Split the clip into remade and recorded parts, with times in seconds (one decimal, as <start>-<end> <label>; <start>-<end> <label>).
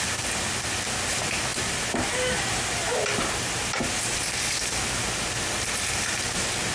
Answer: 0.0-6.7 recorded